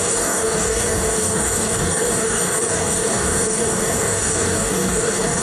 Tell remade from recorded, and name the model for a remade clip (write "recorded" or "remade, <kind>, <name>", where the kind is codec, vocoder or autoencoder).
remade, codec, DAC